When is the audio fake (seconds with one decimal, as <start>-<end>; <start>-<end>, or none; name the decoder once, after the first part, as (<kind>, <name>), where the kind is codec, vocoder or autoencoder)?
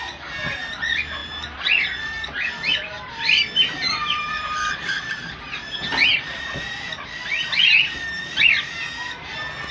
2.7-5.4 (vocoder, BigVGAN v2); 6.1-8.7